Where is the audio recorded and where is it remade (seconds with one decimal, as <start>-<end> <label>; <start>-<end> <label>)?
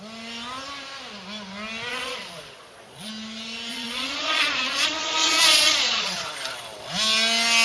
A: 0.0-1.9 recorded; 1.9-3.1 remade; 3.1-3.7 recorded; 3.7-6.3 remade; 6.3-7.6 recorded